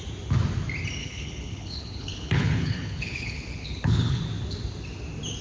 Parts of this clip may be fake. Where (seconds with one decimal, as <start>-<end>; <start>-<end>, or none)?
1.0-4.2